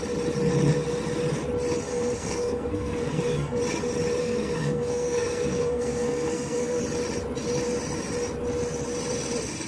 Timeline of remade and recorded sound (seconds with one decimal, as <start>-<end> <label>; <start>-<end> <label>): 0.0-1.9 recorded; 1.9-3.6 remade; 3.6-4.2 recorded; 4.2-6.8 remade; 6.8-9.7 recorded